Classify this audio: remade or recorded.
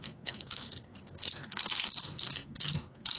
remade